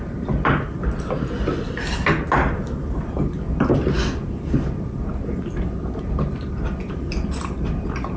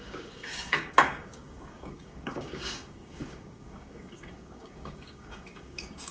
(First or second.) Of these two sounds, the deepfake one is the second